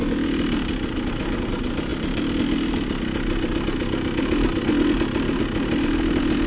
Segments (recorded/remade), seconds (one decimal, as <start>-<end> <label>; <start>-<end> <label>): 0.0-6.5 recorded